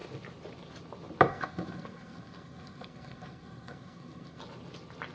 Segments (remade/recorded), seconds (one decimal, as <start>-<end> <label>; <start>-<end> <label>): 0.0-1.3 recorded; 1.3-4.4 remade; 4.4-5.1 recorded